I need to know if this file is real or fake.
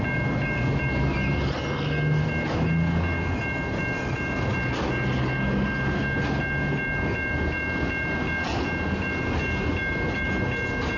real